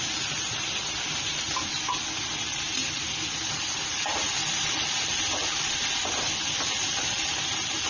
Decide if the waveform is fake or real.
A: real